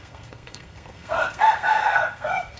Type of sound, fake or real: fake